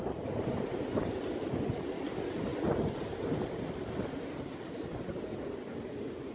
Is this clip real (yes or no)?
yes